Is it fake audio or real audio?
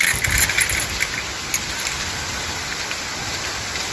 real